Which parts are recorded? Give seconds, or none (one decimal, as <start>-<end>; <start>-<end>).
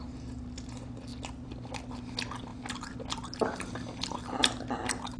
0.0-5.2